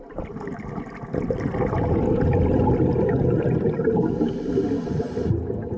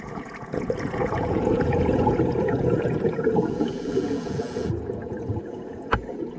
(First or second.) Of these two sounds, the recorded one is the first